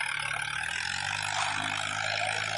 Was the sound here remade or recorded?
recorded